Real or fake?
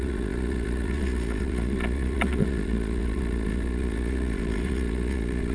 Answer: fake